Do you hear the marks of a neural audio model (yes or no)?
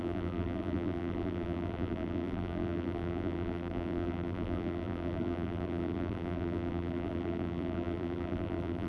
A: yes